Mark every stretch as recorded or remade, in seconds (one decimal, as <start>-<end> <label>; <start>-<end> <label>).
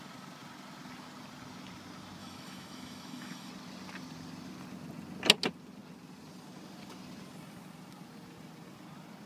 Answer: 0.0-2.2 recorded; 2.2-3.5 remade; 3.5-9.3 recorded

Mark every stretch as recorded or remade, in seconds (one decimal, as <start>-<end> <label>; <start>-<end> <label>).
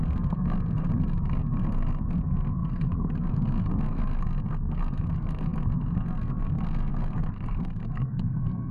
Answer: 0.0-8.7 remade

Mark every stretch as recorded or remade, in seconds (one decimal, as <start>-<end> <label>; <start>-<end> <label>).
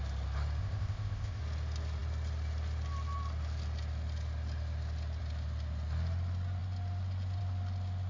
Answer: 0.0-0.6 recorded; 0.6-1.4 remade; 1.4-8.1 recorded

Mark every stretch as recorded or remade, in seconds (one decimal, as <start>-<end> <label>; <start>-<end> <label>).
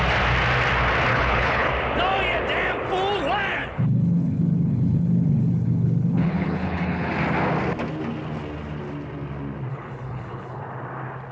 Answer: 0.0-1.1 recorded; 1.1-1.7 remade; 1.7-3.5 recorded; 3.5-7.1 remade; 7.1-9.7 recorded; 9.7-10.6 remade; 10.6-11.3 recorded